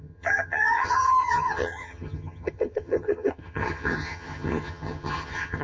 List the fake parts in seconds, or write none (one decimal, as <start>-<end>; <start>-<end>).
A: 0.0-5.6